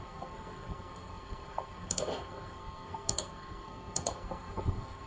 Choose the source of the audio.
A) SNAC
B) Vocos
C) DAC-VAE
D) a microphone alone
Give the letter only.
A